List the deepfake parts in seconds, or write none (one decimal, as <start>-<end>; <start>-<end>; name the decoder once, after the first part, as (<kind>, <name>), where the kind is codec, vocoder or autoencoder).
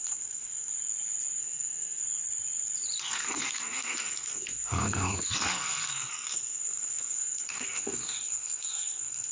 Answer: 0.0-0.7 (codec, SNAC); 1.4-2.0; 3.0-9.3